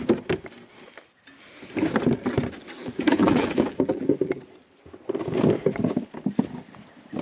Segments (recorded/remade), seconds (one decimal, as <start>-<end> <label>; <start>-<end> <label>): 0.0-2.8 recorded; 2.8-4.3 remade; 4.3-7.2 recorded